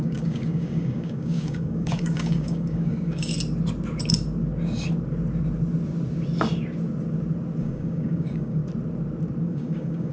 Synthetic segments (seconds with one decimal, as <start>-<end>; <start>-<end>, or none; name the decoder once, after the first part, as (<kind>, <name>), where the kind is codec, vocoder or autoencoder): 0.0-3.3 (codec, DAC); 7.6-8.6; 9.4-10.1